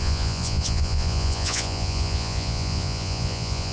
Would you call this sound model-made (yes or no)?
yes